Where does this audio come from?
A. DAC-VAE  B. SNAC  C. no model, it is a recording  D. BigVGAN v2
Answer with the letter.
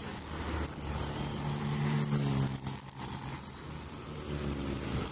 C